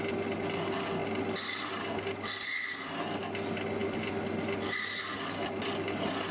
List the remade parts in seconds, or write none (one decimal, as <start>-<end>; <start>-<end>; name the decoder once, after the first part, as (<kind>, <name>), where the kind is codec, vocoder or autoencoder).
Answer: none